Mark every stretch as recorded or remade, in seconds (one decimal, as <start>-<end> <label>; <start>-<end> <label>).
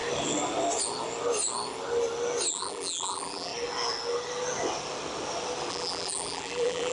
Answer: 0.0-2.5 recorded; 2.5-3.5 remade; 3.5-5.7 recorded; 5.7-6.9 remade